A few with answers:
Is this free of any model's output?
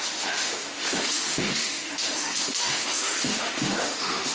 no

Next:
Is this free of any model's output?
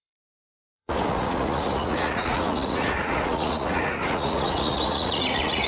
no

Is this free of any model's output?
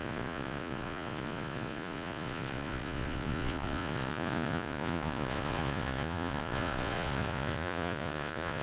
no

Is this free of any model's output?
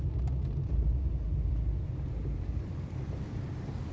yes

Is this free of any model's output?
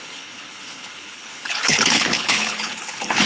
no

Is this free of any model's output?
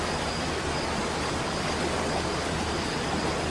yes